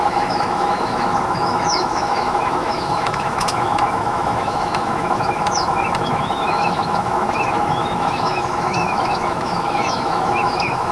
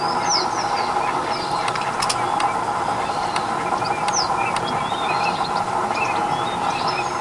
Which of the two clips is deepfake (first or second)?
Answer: first